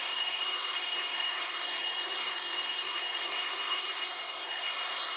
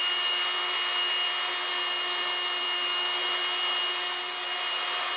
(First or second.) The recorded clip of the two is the second